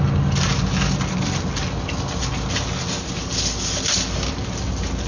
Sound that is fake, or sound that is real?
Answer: real